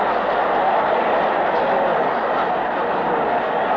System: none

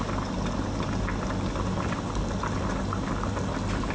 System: none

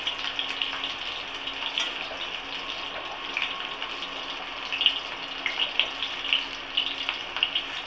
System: none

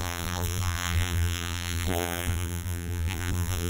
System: vocoder, BigVGAN v2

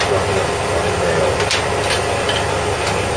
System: none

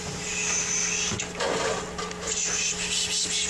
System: none